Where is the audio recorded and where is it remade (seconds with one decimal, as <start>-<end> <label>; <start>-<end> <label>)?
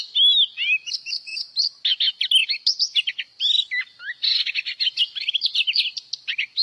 0.0-6.6 recorded